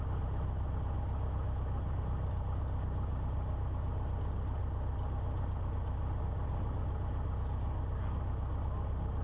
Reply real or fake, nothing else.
real